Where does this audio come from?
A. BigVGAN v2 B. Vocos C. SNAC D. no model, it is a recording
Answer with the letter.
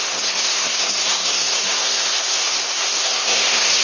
C